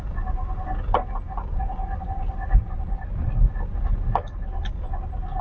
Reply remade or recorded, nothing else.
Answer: recorded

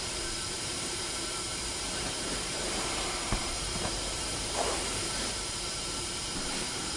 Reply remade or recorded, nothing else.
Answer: remade